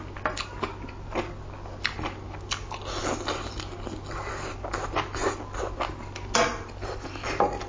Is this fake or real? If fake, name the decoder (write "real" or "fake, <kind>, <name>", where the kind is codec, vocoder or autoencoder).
real